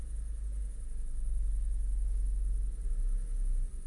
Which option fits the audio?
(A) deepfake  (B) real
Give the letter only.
B